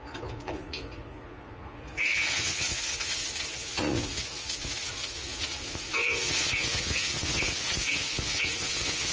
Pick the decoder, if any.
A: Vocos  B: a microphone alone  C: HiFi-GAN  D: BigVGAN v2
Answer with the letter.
A